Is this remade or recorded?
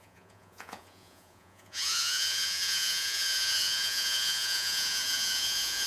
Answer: remade